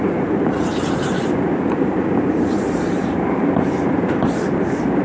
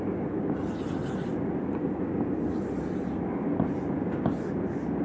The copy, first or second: first